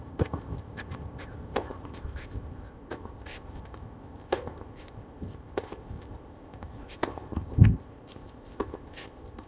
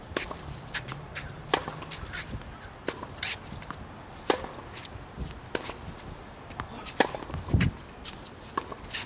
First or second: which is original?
second